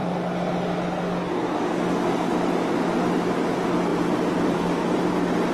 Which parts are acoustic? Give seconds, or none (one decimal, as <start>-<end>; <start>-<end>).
0.0-3.9; 5.1-5.5